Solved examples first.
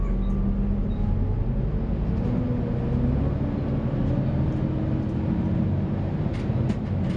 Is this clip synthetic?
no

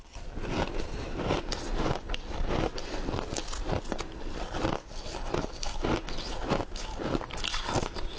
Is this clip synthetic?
no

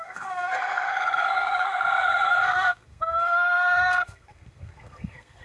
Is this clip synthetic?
yes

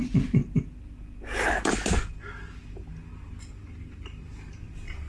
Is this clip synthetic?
no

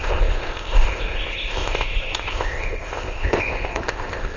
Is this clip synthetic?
yes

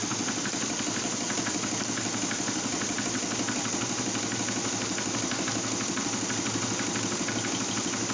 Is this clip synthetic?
no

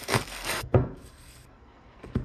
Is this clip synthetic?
yes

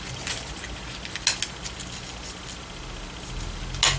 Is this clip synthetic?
no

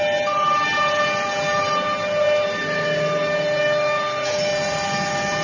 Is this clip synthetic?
no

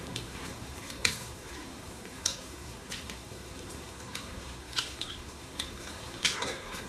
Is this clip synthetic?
yes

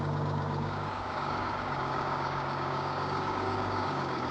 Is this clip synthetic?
yes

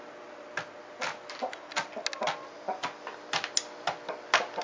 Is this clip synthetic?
no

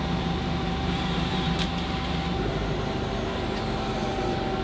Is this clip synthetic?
yes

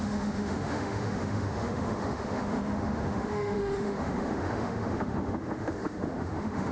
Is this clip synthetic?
yes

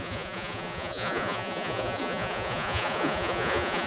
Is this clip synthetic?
yes